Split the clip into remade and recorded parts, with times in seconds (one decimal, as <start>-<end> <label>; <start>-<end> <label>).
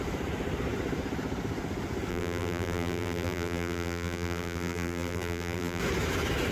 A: 0.0-2.1 recorded; 2.1-5.8 remade; 5.8-6.5 recorded